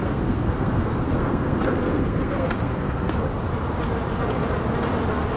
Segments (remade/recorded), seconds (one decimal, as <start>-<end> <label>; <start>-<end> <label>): 0.0-3.2 remade; 3.2-5.4 recorded